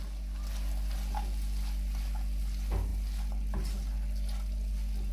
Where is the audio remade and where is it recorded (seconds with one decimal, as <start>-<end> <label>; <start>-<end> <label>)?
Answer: 0.0-5.1 recorded